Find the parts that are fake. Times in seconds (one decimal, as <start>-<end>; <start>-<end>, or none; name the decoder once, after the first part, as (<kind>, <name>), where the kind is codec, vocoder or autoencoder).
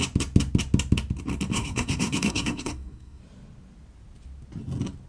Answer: 1.5-3.2 (codec, SNAC)